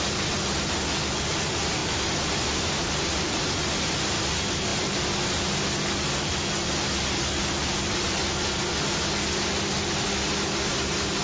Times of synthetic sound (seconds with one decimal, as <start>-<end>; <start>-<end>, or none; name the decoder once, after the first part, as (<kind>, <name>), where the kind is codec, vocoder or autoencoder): 4.7-5.5 (vocoder, BigVGAN v2); 7.6-8.3